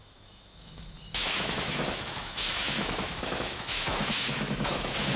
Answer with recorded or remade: remade